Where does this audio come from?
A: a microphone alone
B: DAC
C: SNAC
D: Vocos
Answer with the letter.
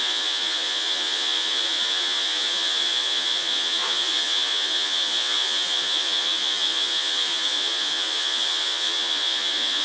D